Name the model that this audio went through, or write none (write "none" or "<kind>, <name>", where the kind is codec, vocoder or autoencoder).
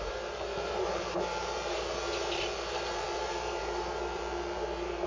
vocoder, BigVGAN v2